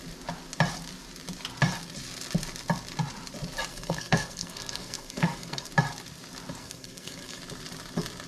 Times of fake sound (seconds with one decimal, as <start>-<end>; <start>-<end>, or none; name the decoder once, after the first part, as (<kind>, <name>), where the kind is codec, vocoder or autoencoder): 3.7-5.7 (codec, SNAC); 6.6-7.4